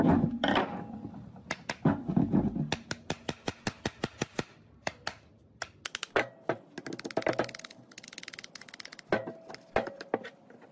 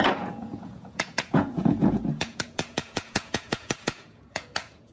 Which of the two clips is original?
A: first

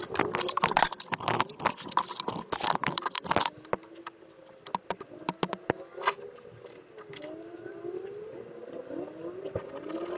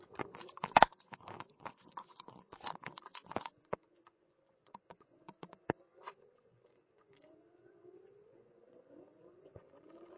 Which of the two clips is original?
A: first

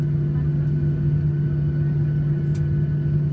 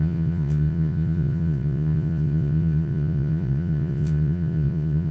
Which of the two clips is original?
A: first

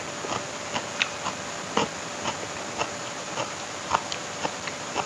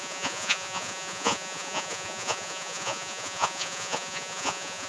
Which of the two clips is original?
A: first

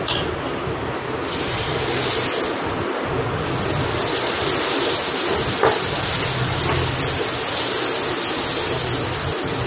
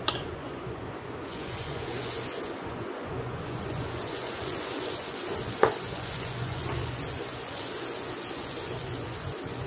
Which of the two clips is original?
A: first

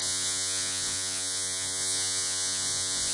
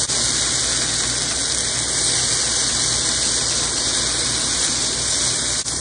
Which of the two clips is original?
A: second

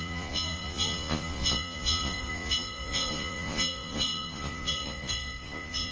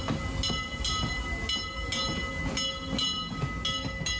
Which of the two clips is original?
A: second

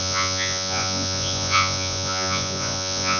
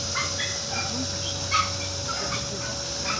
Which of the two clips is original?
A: second